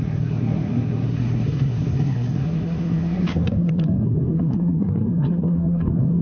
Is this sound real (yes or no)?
no